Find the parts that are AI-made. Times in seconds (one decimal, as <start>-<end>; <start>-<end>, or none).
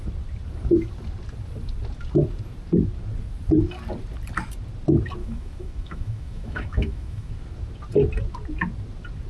5.2-7.3